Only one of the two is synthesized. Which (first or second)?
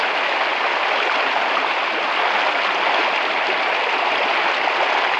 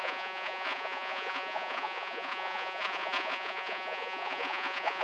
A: second